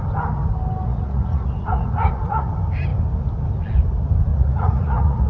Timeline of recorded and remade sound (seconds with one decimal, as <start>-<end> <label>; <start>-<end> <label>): 0.0-0.9 recorded; 0.9-2.5 remade; 2.5-4.3 recorded; 4.3-5.3 remade